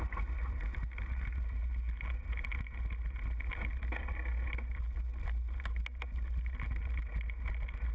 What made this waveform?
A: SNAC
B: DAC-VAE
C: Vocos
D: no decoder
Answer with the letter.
D